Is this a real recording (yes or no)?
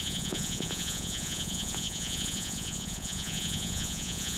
no